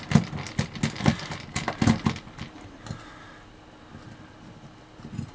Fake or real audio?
real